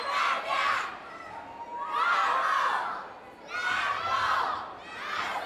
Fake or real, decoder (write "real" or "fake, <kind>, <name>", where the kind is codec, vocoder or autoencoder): real